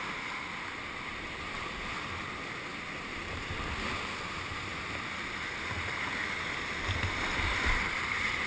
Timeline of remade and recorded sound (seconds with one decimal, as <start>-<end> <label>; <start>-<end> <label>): 0.0-2.7 recorded; 2.7-3.4 remade; 3.4-8.5 recorded